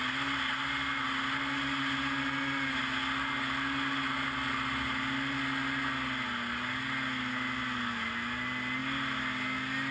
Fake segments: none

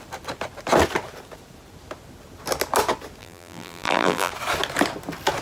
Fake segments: 3.2-4.3 (vocoder, BigVGAN v2)

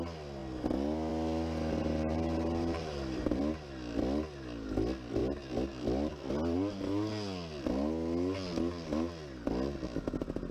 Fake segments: 1.8-3.4 (vocoder, BigVGAN v2)

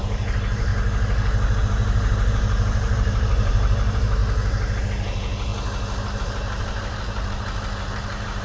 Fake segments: 0.0-0.7 (vocoder, BigVGAN v2); 1.6-4.2; 4.8-5.5; 6.2-8.4